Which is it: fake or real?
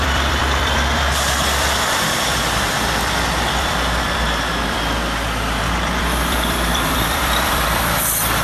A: fake